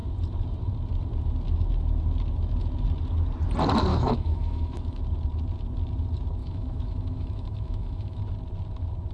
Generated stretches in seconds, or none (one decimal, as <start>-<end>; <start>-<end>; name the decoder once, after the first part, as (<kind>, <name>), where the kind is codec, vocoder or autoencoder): 3.9-5.0 (autoencoder, DAC-VAE); 6.4-8.2